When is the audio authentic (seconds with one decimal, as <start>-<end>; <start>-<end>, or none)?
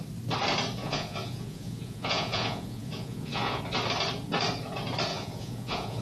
0.0-0.8; 3.6-5.1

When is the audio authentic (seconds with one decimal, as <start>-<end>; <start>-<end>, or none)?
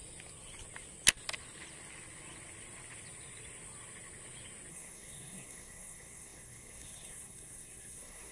0.0-4.7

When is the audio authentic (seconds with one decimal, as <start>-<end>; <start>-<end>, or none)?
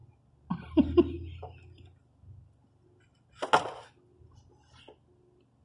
0.0-5.6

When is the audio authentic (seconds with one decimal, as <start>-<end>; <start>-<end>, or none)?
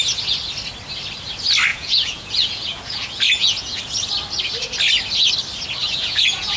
0.0-1.7; 3.8-5.8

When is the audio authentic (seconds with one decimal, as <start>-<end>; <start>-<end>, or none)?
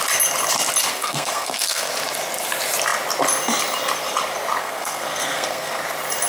0.0-0.9; 1.9-4.6; 5.8-6.3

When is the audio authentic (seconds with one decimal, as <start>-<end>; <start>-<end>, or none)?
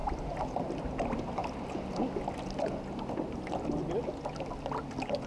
0.6-5.3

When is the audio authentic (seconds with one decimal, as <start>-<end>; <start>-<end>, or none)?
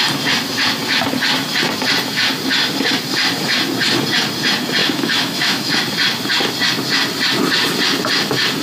0.0-4.8; 5.8-8.6